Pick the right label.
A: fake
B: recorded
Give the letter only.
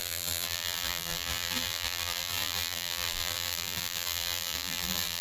A